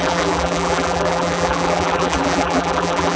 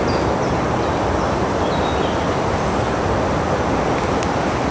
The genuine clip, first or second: second